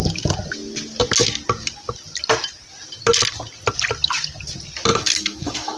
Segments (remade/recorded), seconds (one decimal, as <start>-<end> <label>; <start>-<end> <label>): 0.0-4.9 recorded; 4.9-5.8 remade